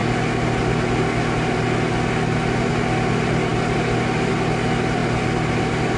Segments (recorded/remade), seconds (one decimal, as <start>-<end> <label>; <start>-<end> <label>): 0.0-6.0 recorded